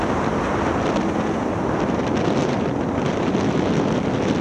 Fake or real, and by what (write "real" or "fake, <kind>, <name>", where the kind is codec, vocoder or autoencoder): real